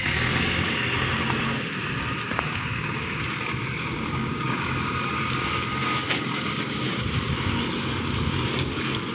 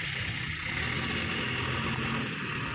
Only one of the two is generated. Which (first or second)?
first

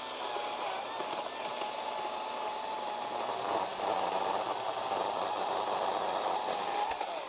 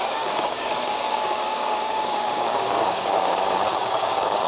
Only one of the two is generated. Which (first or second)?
second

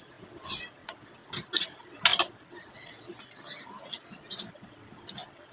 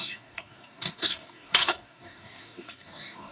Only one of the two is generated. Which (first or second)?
second